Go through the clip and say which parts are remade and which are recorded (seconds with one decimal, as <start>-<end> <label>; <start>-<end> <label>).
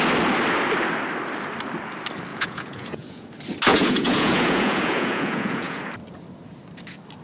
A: 0.0-2.3 recorded; 2.3-3.3 remade; 3.3-3.7 recorded; 3.7-5.8 remade; 5.8-7.2 recorded